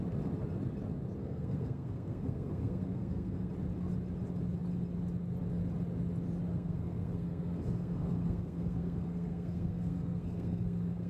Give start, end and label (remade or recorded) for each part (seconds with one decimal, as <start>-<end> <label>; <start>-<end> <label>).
0.0-1.2 recorded; 1.2-3.5 remade; 3.5-6.5 recorded; 6.5-11.1 remade